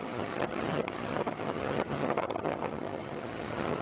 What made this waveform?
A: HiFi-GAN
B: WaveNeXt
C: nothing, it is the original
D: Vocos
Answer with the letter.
A